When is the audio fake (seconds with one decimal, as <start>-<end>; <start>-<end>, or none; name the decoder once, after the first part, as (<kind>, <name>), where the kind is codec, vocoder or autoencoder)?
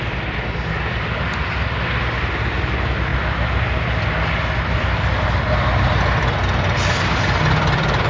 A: none